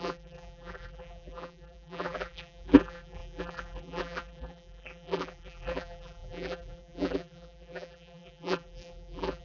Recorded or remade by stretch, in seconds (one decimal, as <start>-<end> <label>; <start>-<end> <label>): 0.0-9.4 remade